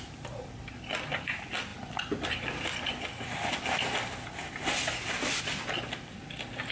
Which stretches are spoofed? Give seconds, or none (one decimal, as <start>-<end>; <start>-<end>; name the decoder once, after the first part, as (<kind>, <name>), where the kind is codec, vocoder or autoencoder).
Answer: none

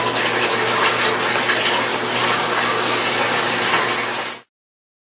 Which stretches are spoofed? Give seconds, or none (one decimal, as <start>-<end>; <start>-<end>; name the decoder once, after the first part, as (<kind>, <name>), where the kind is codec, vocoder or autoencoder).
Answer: 0.4-1.0 (codec, DAC); 1.9-3.0

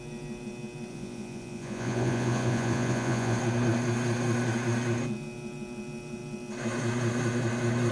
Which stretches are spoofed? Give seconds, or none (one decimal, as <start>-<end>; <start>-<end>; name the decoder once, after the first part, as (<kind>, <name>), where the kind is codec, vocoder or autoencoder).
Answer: 0.9-3.4 (vocoder, Vocos)

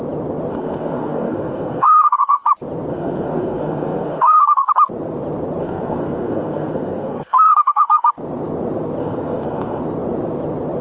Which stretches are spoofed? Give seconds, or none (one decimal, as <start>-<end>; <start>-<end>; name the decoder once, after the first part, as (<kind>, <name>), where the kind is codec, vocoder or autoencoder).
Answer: 0.5-2.5 (codec, SNAC); 2.9-4.7; 5.6-8.1; 9.0-9.8

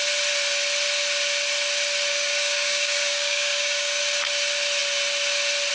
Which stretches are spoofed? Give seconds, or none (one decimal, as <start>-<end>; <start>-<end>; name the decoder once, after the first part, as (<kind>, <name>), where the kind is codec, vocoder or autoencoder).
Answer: 2.1-4.0 (codec, DAC)

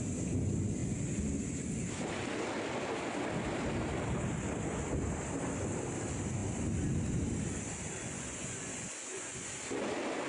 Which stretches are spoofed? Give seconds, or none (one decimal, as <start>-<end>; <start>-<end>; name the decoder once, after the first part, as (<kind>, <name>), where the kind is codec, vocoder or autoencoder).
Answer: 8.0-9.5 (vocoder, Vocos)

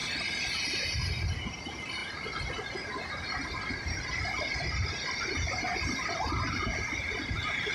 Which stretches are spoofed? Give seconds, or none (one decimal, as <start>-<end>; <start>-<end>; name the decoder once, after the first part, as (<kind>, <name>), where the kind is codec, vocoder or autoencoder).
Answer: 0.8-2.0 (vocoder, BigVGAN v2); 6.5-7.7

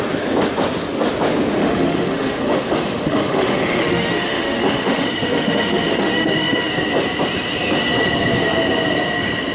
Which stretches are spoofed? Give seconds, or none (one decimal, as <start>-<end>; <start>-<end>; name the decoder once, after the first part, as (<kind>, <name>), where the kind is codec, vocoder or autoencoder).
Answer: 1.6-6.7 (autoencoder, DAC-VAE)